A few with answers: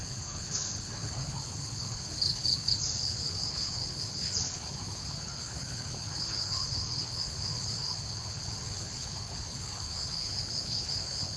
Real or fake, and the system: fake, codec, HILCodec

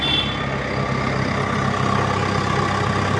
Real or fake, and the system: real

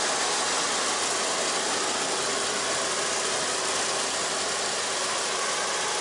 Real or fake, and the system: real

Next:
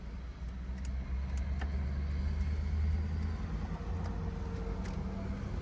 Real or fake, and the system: real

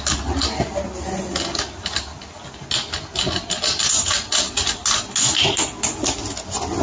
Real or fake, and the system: real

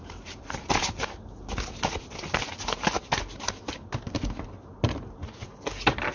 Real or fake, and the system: real